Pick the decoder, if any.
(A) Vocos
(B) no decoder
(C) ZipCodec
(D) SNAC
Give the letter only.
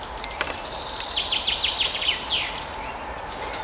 B